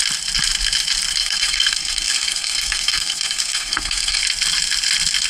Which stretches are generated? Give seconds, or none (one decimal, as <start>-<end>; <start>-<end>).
1.2-4.2